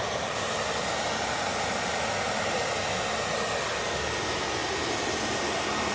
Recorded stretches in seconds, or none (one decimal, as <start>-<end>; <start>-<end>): 0.0-5.9